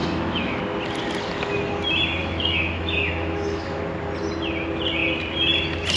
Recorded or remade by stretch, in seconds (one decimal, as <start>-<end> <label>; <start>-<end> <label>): 0.0-0.6 remade; 0.6-2.2 recorded; 2.2-3.8 remade; 3.8-6.0 recorded